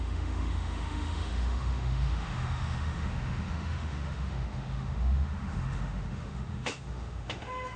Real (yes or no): no